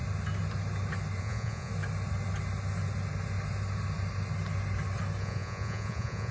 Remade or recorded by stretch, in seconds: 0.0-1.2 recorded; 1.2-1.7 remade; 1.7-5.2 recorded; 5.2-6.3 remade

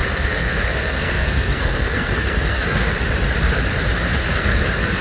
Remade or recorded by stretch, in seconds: 0.0-2.9 remade; 2.9-4.2 recorded; 4.2-5.0 remade

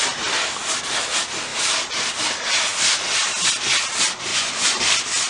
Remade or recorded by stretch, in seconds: 0.0-4.3 recorded; 4.3-4.8 remade; 4.8-5.3 recorded

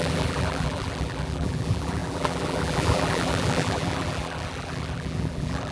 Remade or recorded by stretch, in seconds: 0.0-5.7 remade

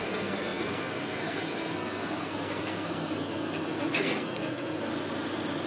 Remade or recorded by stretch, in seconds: 0.0-4.9 remade; 4.9-5.7 recorded